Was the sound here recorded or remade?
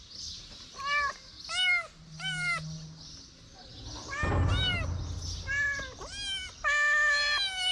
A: recorded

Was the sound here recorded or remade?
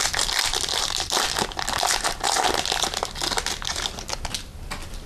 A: recorded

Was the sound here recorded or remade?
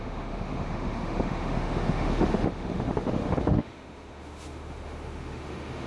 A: remade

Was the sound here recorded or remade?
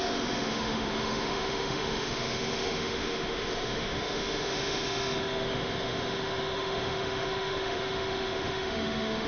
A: remade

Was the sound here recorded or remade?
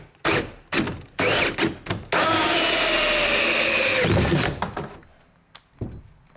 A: recorded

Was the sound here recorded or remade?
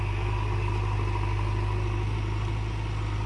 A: recorded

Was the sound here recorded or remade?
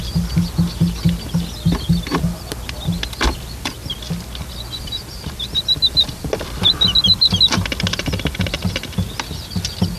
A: recorded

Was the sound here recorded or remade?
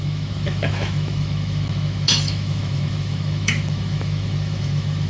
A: remade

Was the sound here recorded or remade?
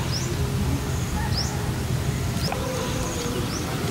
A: recorded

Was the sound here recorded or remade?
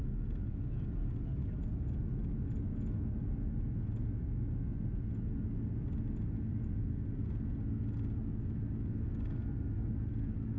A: recorded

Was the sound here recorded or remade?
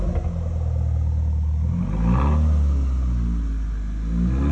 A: recorded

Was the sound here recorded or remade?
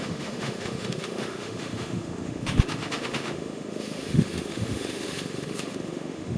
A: remade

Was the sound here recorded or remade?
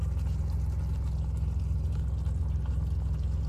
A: recorded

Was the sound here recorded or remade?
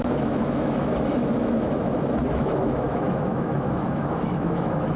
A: remade